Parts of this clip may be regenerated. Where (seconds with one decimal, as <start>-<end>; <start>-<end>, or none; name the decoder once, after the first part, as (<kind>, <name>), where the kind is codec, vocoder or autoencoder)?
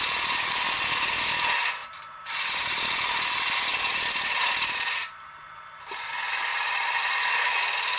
1.8-2.8 (vocoder, BigVGAN v2); 3.7-6.1; 6.5-8.0